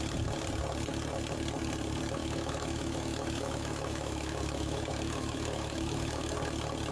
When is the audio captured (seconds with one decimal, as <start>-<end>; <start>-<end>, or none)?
0.0-2.2; 6.3-6.9